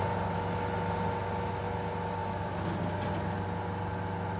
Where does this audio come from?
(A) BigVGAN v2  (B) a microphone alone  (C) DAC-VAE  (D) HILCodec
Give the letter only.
B